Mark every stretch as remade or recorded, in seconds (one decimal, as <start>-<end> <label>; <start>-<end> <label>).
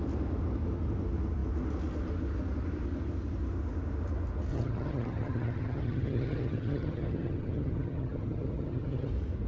0.0-4.5 recorded; 4.5-9.1 remade; 9.1-9.5 recorded